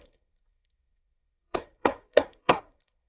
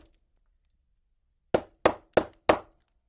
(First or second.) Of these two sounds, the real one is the second